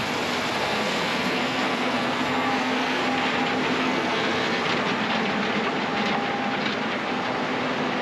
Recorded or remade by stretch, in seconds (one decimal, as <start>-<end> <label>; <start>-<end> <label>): 0.0-0.6 recorded; 0.6-3.0 remade; 3.0-3.8 recorded; 3.8-4.6 remade; 4.6-8.0 recorded

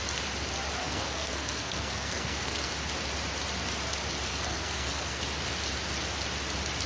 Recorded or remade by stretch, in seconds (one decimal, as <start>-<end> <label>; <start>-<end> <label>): 0.0-0.8 recorded; 0.8-2.7 remade; 2.7-4.3 recorded; 4.3-5.2 remade; 5.2-6.9 recorded

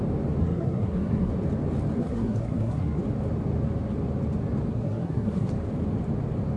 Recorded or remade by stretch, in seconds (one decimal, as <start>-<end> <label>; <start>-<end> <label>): 0.0-0.4 recorded; 0.4-1.3 remade; 1.3-2.0 recorded; 2.0-3.0 remade; 3.0-4.7 recorded; 4.7-5.5 remade; 5.5-6.6 recorded

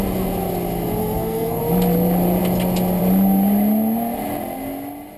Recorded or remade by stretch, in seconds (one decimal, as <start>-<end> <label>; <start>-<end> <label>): 0.0-1.0 recorded; 1.0-1.6 remade; 1.6-5.2 recorded

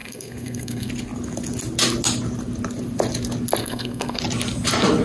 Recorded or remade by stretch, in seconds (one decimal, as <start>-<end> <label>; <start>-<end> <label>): 0.0-0.9 remade; 0.9-3.6 recorded; 3.6-4.2 remade; 4.2-5.0 recorded

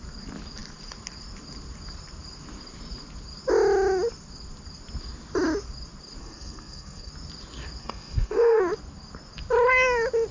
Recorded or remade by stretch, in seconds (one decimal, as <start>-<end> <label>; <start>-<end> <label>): 0.0-6.2 recorded; 6.2-7.1 remade; 7.1-7.8 recorded; 7.8-8.6 remade; 8.6-10.3 recorded